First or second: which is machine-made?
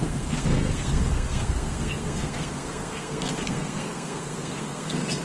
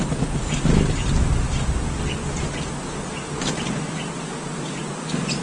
first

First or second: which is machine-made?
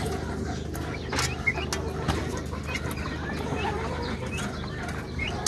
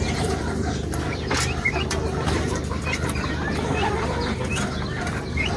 second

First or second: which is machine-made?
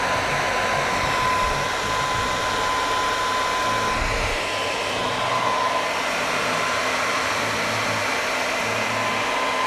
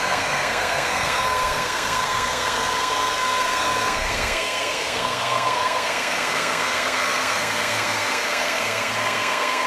second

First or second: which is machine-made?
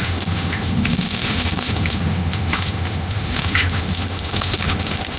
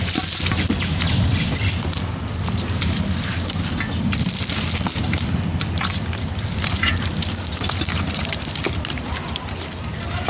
first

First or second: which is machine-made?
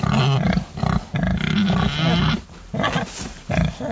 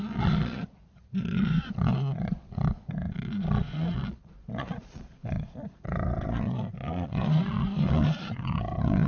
second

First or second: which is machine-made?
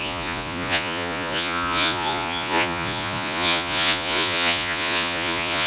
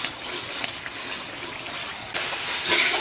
first